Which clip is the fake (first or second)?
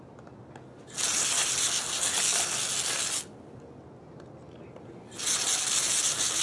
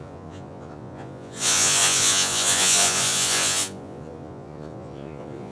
second